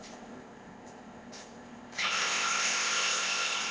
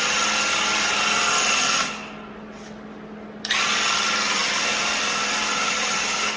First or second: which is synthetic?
first